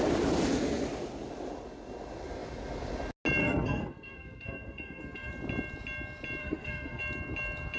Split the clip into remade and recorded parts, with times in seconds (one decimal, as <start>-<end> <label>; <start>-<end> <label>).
0.0-3.4 recorded; 3.4-5.3 remade; 5.3-6.4 recorded; 6.4-7.0 remade; 7.0-7.8 recorded